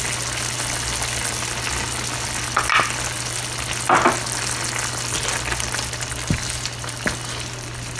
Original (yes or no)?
yes